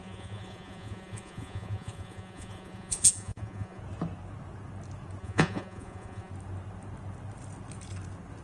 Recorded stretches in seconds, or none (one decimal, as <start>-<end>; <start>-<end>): 3.8-5.2; 6.3-8.4